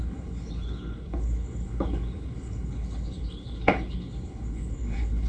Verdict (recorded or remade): remade